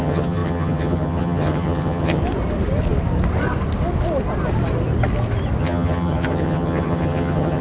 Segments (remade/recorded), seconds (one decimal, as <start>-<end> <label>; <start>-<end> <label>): 0.0-2.2 remade; 2.2-5.6 recorded; 5.6-7.6 remade